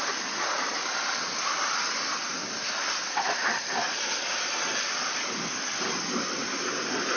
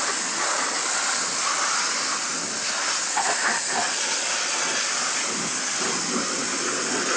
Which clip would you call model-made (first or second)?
first